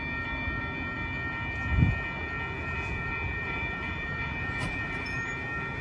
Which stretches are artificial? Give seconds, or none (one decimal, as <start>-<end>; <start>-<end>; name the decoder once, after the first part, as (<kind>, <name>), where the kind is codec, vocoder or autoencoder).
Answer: 2.6-5.3 (vocoder, BigVGAN v2)